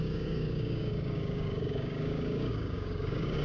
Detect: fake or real fake